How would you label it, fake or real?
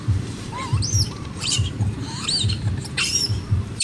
fake